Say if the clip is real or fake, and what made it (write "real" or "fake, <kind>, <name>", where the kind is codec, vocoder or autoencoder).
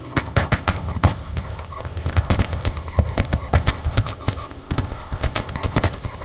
fake, codec, ZipCodec